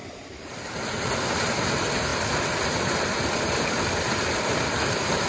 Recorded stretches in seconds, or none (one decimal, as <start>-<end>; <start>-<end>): 1.5-2.1